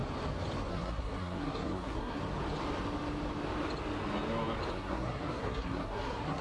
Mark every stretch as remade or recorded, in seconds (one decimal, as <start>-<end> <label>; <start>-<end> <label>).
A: 0.0-0.7 recorded; 0.7-2.2 remade; 2.2-4.7 recorded; 4.7-6.4 remade

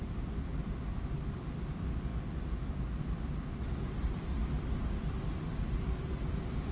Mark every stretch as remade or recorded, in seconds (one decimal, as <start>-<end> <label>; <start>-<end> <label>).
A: 0.0-0.5 remade; 0.5-1.3 recorded; 1.3-2.1 remade; 2.1-3.4 recorded; 3.4-6.7 remade

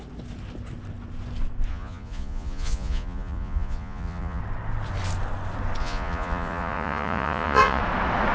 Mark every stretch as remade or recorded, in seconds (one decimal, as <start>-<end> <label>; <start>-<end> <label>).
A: 0.0-1.7 recorded; 1.7-4.4 remade; 4.4-5.8 recorded; 5.8-7.8 remade; 7.8-8.3 recorded